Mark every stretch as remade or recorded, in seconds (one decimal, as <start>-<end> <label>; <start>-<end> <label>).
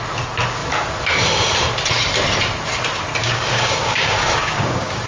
0.0-3.2 recorded; 3.2-5.1 remade